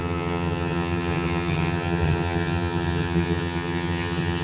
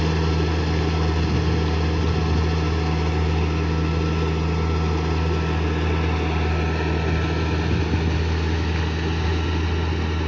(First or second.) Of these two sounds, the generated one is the first